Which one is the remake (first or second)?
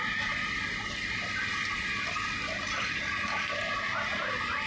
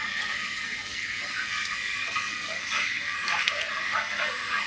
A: second